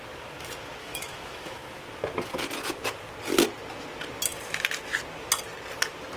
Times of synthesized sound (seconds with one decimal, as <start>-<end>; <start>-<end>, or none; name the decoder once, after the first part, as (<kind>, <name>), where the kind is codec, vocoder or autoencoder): 0.8-1.8 (autoencoder, DAC-VAE)